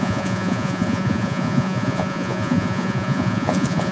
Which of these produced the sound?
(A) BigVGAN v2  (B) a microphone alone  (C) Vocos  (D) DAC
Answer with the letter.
C